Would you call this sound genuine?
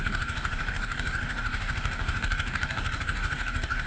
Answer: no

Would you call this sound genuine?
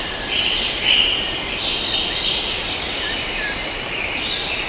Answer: yes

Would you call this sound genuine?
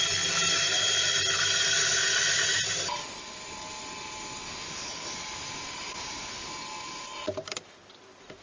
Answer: yes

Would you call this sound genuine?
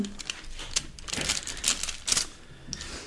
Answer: yes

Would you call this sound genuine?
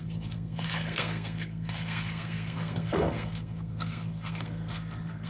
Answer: no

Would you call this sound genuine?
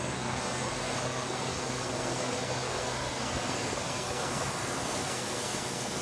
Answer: no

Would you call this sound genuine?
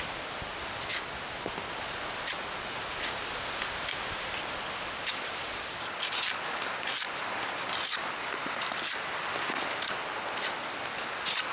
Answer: yes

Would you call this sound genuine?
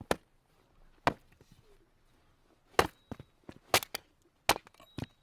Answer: yes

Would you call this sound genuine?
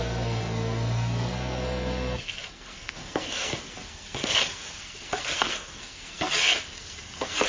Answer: no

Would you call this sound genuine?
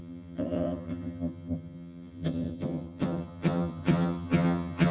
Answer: no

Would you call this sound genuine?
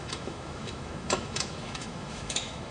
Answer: no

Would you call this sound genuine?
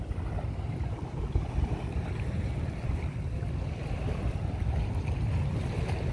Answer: yes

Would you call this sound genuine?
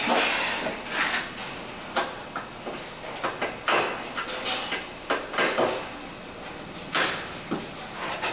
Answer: yes